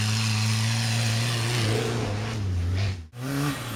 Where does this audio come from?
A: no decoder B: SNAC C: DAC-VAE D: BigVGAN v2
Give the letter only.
A